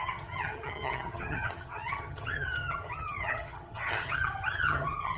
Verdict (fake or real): fake